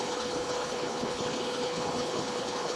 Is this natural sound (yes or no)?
no